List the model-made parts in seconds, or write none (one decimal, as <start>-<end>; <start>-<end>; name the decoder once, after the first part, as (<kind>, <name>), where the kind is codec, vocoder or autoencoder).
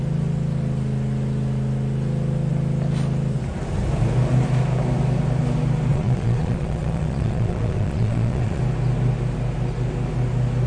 5.9-8.6 (vocoder, Vocos)